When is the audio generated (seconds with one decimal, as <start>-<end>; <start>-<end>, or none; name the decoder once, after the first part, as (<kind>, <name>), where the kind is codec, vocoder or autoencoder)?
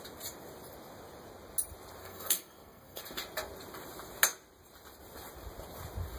2.0-3.0 (codec, SNAC)